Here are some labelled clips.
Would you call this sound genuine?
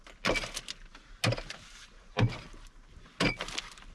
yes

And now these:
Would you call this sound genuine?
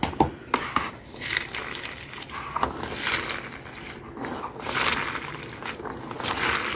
yes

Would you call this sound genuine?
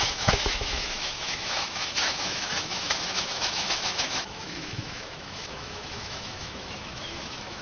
no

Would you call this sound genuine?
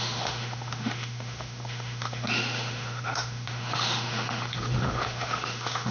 no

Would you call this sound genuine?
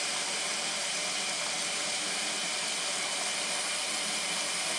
yes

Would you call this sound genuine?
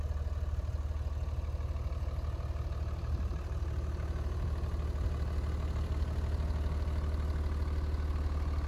yes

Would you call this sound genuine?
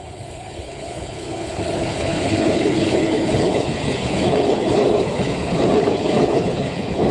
no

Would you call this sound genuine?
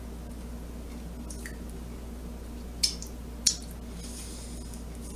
yes